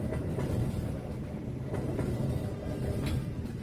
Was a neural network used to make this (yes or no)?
no